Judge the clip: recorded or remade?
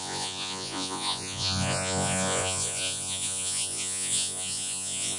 remade